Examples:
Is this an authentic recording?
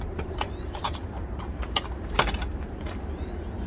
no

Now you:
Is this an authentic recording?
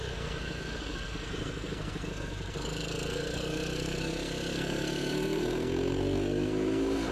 no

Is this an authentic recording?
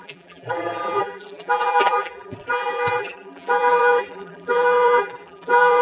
no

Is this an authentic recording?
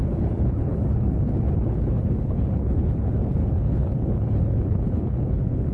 no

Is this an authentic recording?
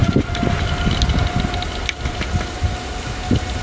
yes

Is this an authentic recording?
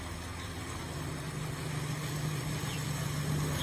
yes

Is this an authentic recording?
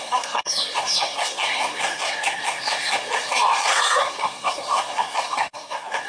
no